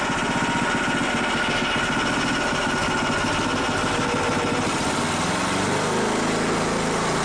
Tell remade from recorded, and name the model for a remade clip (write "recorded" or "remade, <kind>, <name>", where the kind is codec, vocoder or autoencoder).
recorded